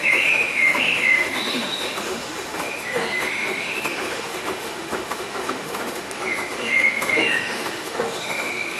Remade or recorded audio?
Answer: remade